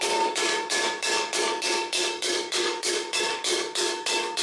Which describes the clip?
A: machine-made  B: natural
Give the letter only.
A